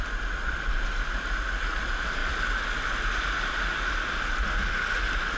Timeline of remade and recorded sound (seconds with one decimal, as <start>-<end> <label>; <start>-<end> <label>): 0.0-5.4 recorded